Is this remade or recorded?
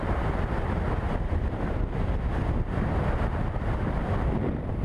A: remade